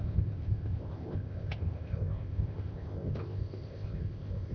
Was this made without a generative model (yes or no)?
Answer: no